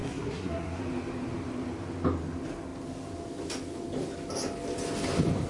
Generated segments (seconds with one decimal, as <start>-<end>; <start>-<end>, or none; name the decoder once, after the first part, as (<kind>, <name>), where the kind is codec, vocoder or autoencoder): 0.0-0.8 (codec, SNAC)